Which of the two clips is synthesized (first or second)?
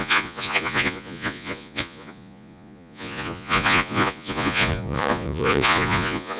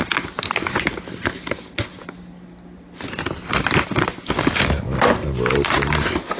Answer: first